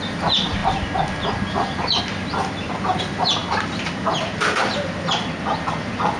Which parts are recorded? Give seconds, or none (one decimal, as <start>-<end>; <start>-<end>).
0.0-6.2